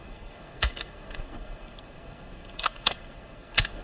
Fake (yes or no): yes